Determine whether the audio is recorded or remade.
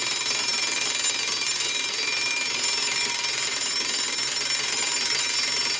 remade